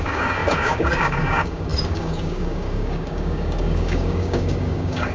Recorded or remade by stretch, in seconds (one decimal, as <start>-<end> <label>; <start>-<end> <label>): 0.0-5.1 remade